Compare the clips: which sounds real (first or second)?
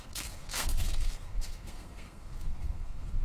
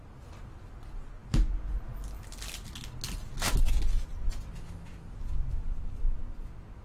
second